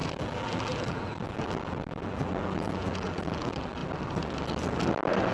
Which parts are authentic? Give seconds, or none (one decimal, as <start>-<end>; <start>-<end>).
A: 3.8-5.3